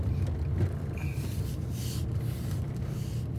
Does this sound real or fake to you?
real